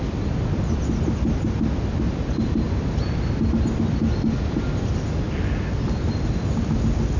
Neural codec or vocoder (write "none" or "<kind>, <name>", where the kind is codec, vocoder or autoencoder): none